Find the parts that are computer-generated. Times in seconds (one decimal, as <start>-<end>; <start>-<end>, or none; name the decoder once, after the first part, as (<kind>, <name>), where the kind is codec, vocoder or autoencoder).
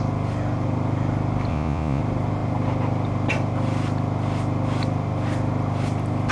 1.5-2.0 (vocoder, Vocos)